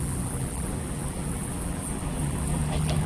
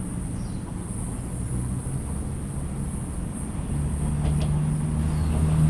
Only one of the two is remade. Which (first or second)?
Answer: first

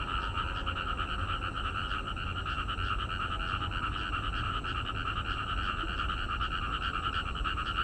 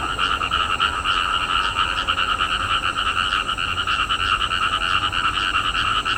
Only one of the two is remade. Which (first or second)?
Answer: first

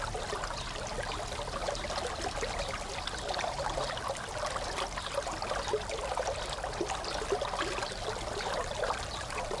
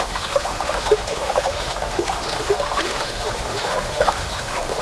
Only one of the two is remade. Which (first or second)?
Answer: second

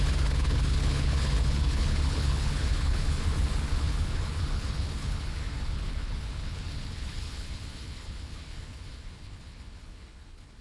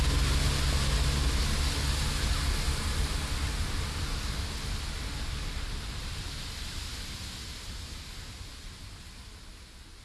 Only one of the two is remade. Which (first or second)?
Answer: first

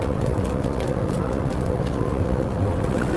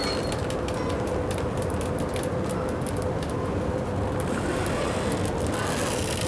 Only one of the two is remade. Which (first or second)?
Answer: first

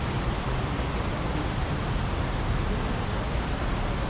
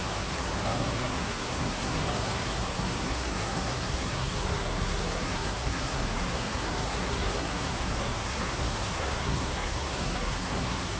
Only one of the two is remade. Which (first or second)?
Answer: second